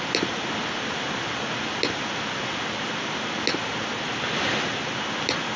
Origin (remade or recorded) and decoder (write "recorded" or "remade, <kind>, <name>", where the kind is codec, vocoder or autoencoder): recorded